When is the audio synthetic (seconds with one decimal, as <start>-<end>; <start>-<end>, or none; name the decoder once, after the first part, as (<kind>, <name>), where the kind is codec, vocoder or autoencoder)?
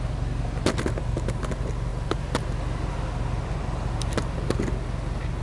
none